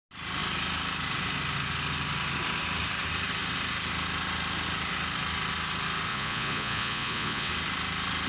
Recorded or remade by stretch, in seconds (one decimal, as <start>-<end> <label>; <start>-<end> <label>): 0.0-6.1 recorded; 6.1-7.5 remade; 7.5-8.3 recorded